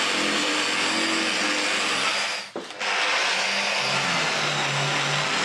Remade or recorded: recorded